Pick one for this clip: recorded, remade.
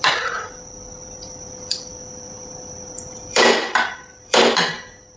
remade